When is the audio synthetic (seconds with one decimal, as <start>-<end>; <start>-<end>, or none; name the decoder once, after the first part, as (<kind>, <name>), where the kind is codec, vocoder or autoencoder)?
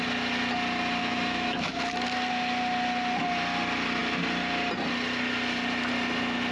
1.0-1.8 (autoencoder, DAC-VAE)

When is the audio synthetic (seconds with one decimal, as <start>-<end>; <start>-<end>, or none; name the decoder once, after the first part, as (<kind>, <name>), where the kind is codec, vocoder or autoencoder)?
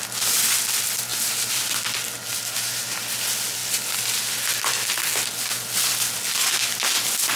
none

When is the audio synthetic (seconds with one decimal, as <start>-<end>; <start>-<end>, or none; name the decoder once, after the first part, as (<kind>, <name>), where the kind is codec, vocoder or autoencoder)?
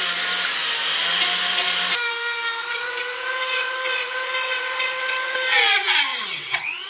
2.6-5.6 (vocoder, WaveNeXt); 6.1-6.9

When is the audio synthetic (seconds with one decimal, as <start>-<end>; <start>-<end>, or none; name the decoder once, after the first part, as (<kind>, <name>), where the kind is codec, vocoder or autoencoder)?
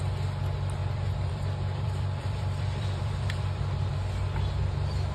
0.8-3.9 (vocoder, BigVGAN v2)